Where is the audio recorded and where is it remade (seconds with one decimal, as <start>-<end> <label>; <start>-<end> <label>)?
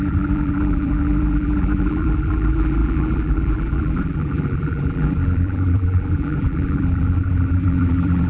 0.0-8.3 remade